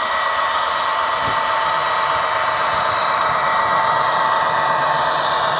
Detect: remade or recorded remade